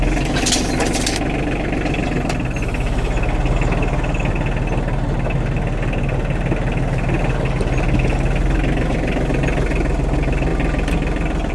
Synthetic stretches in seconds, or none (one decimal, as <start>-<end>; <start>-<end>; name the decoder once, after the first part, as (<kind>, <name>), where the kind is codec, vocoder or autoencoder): none